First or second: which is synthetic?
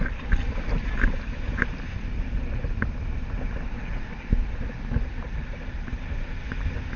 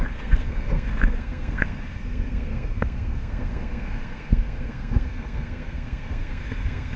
second